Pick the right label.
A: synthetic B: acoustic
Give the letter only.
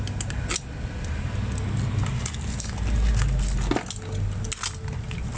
B